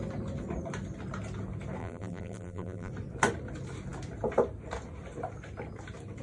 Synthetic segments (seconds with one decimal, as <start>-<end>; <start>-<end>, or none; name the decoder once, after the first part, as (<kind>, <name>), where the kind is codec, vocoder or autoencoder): 1.8-2.9 (vocoder, BigVGAN v2)